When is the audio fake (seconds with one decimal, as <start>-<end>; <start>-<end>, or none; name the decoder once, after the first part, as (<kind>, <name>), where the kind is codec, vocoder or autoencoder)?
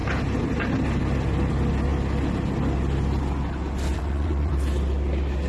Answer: 3.9-4.5 (vocoder, Vocos)